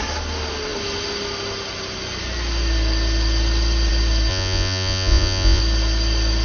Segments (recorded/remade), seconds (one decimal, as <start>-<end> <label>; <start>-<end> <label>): 0.0-4.3 recorded; 4.3-5.6 remade; 5.6-6.4 recorded